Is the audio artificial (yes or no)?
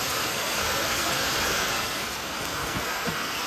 yes